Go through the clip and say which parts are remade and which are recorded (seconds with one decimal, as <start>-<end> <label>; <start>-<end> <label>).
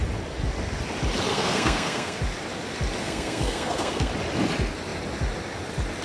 0.0-1.3 recorded; 1.3-2.2 remade; 2.2-3.0 recorded; 3.0-4.1 remade; 4.1-6.0 recorded